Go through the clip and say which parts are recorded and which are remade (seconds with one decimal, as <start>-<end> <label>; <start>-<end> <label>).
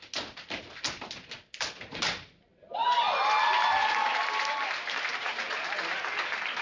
0.0-5.1 recorded; 5.1-6.0 remade; 6.0-6.6 recorded